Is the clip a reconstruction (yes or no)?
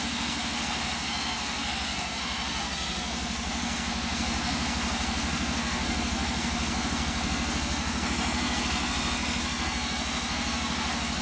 yes